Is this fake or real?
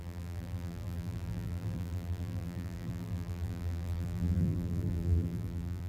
fake